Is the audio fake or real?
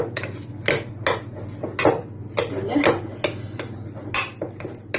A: real